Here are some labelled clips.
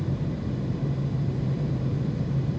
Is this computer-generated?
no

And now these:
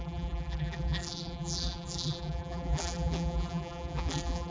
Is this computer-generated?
yes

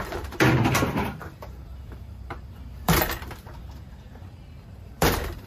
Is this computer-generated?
yes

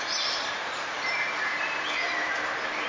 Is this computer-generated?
yes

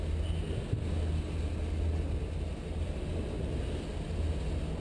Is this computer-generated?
no